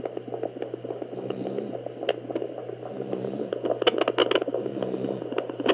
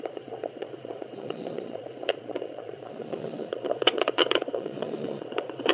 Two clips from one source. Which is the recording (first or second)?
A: first